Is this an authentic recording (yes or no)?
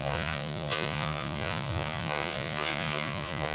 no